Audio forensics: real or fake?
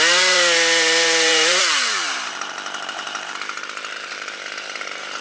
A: fake